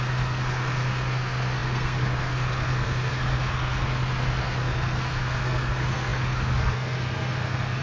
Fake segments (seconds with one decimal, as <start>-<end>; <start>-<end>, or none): 0.0-7.8